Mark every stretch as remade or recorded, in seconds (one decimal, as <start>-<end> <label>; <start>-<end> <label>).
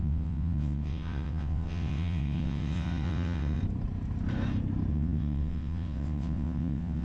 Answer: 0.0-3.6 remade; 3.6-4.9 recorded; 4.9-7.0 remade